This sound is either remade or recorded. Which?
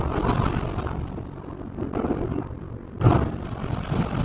recorded